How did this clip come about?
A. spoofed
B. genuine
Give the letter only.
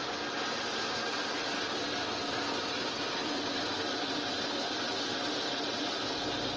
B